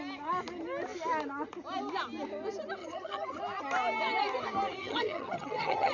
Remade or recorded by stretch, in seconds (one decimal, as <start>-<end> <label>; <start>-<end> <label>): 0.0-2.8 recorded; 2.8-3.4 remade; 3.4-4.8 recorded; 4.8-5.9 remade